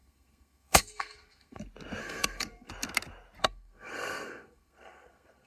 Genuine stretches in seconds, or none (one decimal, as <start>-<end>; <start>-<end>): 1.6-2.0; 2.7-3.4